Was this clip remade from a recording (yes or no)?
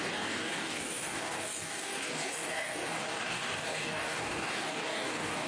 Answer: yes